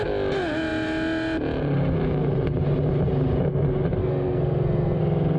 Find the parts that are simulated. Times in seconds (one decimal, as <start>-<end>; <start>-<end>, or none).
4.0-5.0